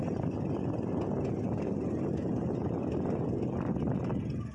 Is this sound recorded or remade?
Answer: recorded